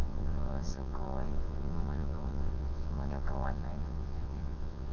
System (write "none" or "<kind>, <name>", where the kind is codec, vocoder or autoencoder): vocoder, WaveNeXt